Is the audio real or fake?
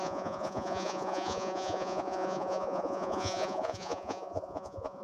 fake